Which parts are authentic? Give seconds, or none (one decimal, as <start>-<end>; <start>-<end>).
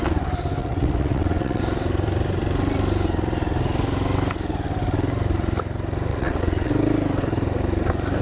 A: 0.0-0.6; 1.6-6.1; 6.7-8.2